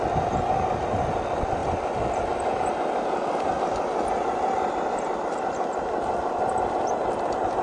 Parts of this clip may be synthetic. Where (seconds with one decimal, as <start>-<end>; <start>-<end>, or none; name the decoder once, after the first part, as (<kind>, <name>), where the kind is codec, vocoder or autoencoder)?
none